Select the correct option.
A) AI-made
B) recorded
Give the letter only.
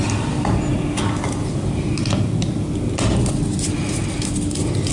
B